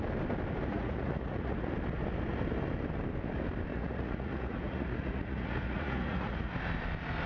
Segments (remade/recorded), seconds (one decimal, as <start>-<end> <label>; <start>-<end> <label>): 0.0-0.7 recorded; 0.7-1.7 remade; 1.7-3.7 recorded; 3.7-6.5 remade; 6.5-7.3 recorded